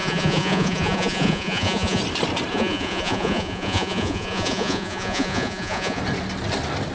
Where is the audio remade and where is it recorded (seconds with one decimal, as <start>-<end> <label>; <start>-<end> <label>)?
0.0-2.0 remade; 2.0-2.5 recorded; 2.5-6.0 remade; 6.0-6.9 recorded